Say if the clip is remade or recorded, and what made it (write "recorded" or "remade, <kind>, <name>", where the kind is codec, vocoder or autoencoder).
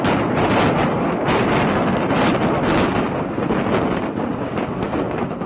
recorded